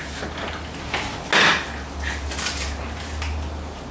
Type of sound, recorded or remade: recorded